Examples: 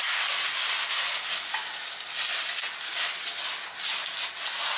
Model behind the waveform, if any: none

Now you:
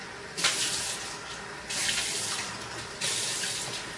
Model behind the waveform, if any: none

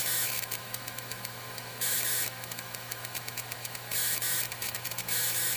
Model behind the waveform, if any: autoencoder, DAC-VAE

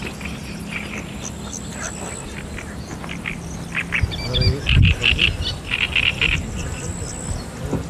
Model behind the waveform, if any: none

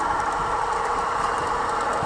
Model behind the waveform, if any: none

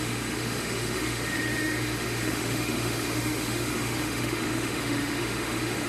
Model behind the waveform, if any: autoencoder, DAC-VAE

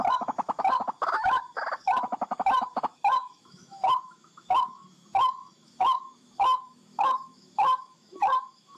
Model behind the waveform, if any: autoencoder, DAC-VAE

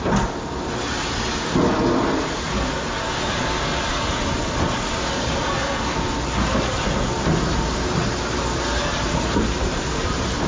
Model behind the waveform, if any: none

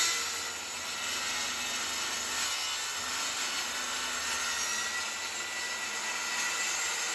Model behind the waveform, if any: none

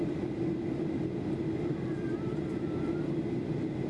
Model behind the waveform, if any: none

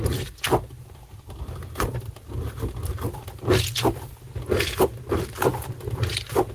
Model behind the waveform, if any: none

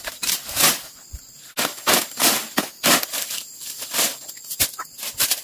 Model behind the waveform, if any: none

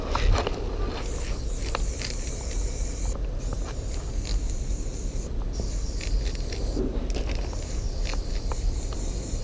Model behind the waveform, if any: none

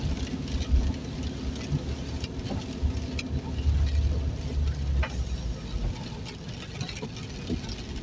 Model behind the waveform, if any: none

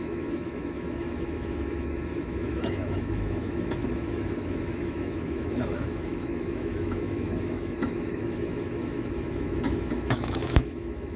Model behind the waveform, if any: autoencoder, DAC-VAE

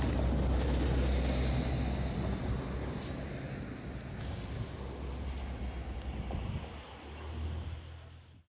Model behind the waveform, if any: none